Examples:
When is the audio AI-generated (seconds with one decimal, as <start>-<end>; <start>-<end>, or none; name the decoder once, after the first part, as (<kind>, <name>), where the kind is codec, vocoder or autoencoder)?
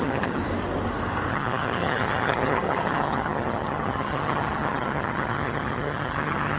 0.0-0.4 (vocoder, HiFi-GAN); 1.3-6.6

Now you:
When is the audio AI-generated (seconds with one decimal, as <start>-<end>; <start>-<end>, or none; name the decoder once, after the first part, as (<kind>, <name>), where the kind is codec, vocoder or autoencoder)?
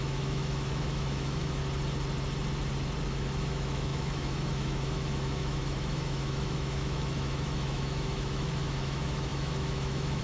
0.0-1.6 (autoencoder, DAC-VAE); 3.1-10.2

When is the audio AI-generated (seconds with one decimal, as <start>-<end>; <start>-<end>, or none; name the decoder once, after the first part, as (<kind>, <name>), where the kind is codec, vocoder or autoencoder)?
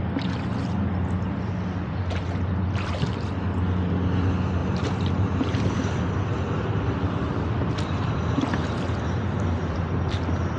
4.6-6.1 (vocoder, BigVGAN v2)